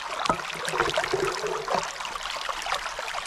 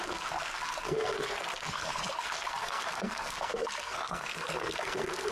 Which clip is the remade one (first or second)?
second